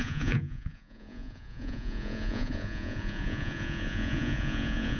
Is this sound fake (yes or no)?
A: yes